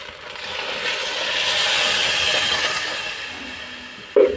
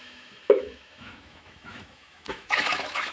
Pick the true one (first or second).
first